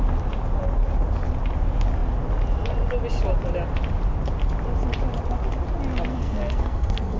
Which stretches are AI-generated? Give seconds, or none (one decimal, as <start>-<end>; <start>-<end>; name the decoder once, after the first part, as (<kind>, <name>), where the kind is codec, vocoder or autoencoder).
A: 6.1-7.2 (codec, SNAC)